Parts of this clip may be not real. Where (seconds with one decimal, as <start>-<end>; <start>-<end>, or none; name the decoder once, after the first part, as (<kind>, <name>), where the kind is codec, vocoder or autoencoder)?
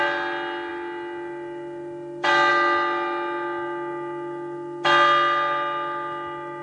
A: none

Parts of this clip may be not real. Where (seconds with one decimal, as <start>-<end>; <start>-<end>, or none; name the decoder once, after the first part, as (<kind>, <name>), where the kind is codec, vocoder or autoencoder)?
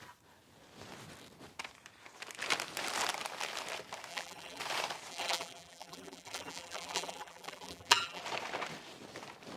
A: 4.1-4.6 (vocoder, BigVGAN v2); 5.1-8.2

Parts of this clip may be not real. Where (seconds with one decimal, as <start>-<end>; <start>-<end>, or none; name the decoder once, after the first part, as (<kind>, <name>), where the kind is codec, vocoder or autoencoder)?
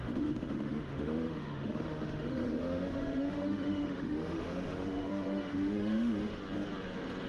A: 0.0-6.3 (autoencoder, DAC-VAE)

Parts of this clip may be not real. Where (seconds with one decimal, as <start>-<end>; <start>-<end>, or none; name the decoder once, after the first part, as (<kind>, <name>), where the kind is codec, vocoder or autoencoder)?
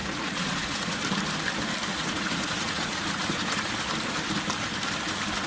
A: 0.0-1.0 (vocoder, Vocos); 1.9-3.7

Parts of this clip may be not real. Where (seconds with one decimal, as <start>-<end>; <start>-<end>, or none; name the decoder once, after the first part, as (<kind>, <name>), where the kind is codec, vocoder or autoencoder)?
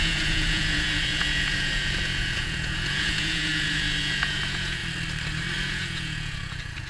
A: 0.0-4.8 (vocoder, Vocos); 5.6-6.9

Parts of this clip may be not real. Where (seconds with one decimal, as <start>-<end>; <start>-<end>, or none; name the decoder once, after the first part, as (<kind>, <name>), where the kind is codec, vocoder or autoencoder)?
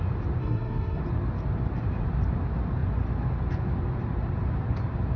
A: 0.4-1.0 (codec, SNAC)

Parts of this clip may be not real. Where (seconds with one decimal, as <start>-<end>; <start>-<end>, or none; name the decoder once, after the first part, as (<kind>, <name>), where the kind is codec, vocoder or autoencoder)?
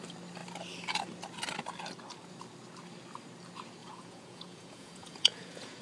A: 3.8-5.8 (vocoder, Vocos)